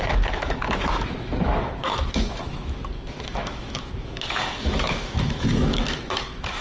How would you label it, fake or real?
fake